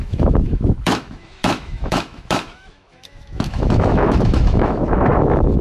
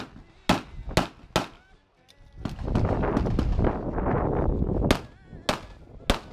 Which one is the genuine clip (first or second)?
second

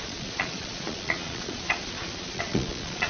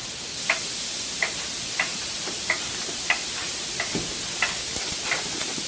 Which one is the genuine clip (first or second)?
second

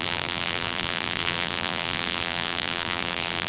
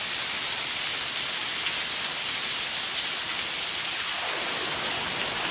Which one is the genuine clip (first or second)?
second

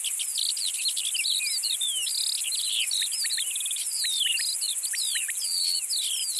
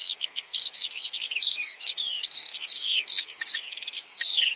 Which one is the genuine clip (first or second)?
first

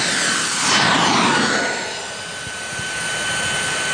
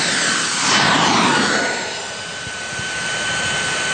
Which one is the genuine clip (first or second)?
first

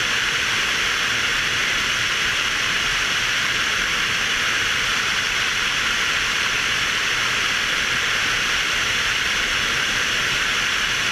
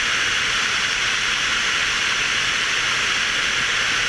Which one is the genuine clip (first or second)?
second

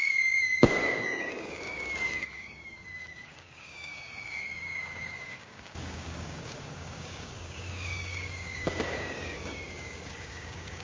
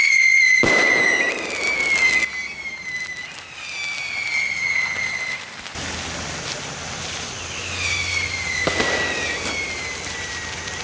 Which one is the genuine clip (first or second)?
second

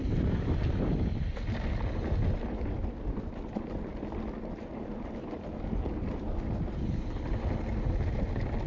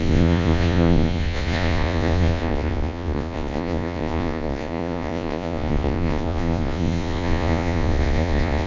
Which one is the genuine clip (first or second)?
first